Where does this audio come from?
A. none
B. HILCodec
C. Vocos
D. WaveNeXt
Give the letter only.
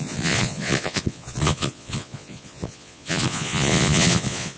C